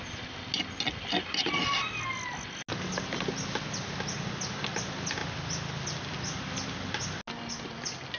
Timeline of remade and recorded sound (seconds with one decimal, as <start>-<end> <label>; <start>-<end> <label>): 0.0-8.2 recorded